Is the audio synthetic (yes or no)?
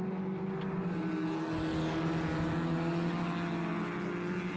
no